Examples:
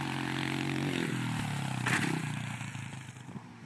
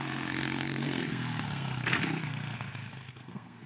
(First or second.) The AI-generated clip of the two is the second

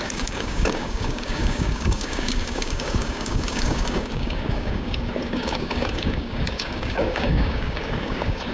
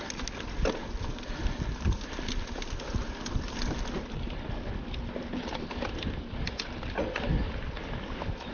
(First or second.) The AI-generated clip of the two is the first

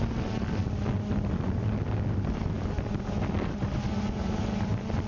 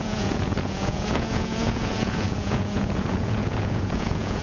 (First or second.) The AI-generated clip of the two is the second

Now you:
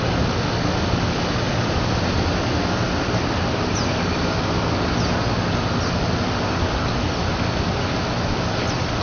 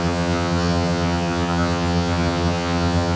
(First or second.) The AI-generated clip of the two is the second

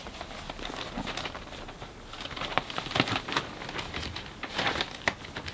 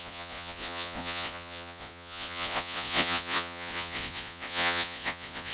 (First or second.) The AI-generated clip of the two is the second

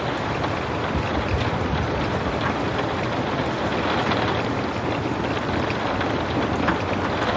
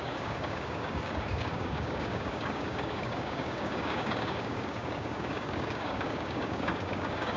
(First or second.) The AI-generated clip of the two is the second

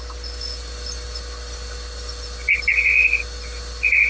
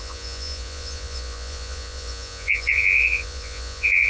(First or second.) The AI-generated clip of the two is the second